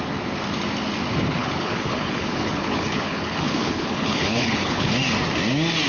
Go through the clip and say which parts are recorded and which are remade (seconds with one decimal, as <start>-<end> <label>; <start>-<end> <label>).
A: 0.0-1.4 recorded; 1.4-4.9 remade; 4.9-5.9 recorded